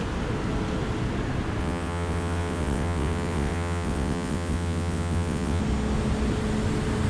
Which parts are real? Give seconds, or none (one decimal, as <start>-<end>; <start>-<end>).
0.0-1.6; 5.6-7.1

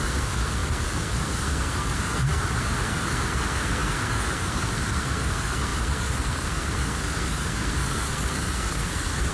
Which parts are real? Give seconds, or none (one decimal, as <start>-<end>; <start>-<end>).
none

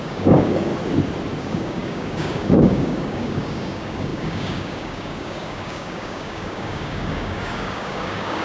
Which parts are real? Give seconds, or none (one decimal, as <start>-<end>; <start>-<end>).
0.7-1.4

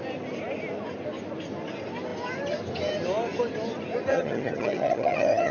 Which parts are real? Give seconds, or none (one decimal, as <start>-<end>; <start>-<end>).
0.0-4.1

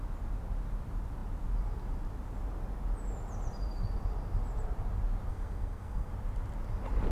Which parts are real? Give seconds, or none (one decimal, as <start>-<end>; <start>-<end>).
0.0-5.3; 6.1-7.1